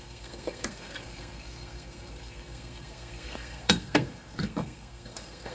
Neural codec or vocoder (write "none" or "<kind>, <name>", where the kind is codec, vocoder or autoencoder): codec, SNAC